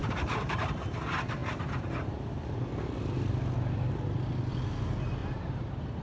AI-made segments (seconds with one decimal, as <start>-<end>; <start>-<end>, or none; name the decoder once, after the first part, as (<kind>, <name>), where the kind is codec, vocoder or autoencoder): 0.0-0.6 (vocoder, BigVGAN v2); 5.2-6.0